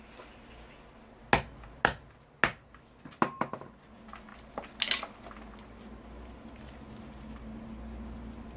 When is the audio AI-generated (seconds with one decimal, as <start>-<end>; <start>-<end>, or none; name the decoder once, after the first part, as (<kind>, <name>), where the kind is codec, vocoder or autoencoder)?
none